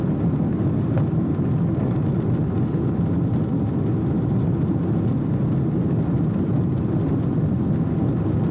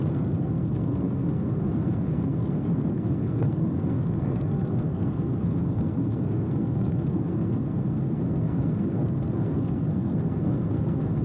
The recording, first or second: first